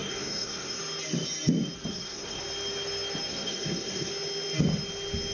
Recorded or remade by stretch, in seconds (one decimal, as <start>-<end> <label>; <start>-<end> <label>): 0.0-0.8 remade; 0.8-1.9 recorded; 1.9-2.4 remade; 2.4-3.3 recorded; 3.3-4.1 remade; 4.1-5.3 recorded